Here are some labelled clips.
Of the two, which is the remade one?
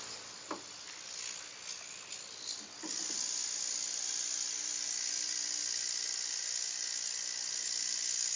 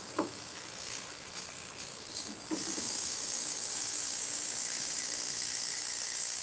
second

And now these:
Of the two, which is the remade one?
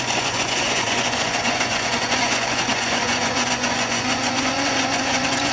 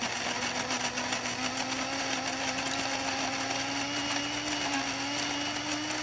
first